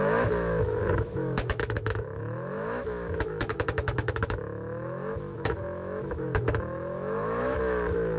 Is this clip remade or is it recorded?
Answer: remade